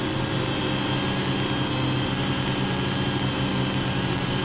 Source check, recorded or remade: recorded